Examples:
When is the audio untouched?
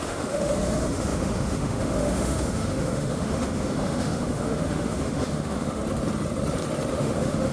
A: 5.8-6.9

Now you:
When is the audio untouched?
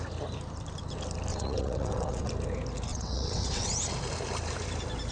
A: 0.0-1.3; 2.3-2.9; 3.7-5.1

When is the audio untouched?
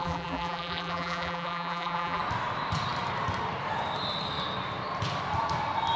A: 2.2-6.0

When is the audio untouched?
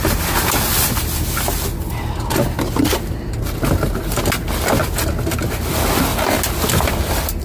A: 0.0-7.4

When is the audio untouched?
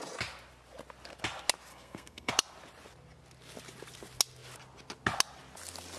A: 0.0-1.7; 2.3-6.0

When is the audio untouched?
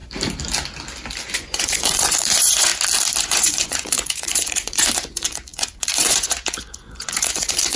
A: 0.0-1.2; 2.7-3.2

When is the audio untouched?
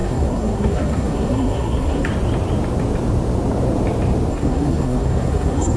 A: 2.1-4.3